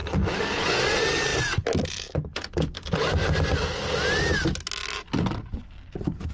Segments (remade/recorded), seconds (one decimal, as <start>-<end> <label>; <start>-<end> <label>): 0.0-0.7 remade; 0.7-4.8 recorded; 4.8-6.3 remade